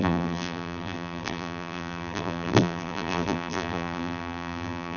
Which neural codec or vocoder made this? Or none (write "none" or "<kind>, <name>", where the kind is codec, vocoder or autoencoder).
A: vocoder, BigVGAN v2